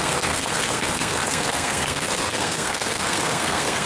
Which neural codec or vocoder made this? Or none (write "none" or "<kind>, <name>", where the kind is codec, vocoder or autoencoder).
codec, SNAC